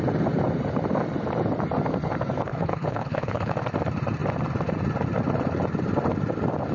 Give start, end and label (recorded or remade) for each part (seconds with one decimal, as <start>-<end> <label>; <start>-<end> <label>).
0.0-2.5 recorded; 2.5-3.5 remade; 3.5-6.7 recorded